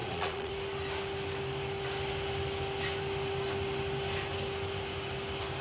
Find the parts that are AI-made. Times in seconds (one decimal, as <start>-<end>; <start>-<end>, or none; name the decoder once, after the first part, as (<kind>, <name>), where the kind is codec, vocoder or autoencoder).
0.0-0.5 (vocoder, Vocos)